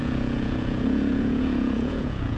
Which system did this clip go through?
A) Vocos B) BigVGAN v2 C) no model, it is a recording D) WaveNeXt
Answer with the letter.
A